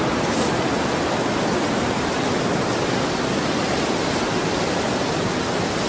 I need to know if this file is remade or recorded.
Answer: recorded